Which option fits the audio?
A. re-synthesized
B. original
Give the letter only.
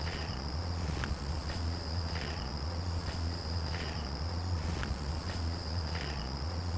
A